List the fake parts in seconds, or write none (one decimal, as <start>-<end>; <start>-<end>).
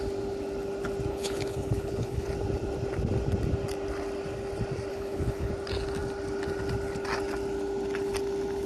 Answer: 1.1-2.3; 4.9-5.5